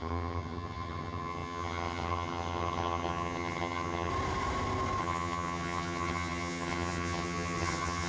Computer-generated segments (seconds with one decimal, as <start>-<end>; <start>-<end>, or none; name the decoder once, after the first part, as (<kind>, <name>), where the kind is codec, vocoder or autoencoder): 0.0-4.1 (vocoder, HiFi-GAN); 5.0-8.1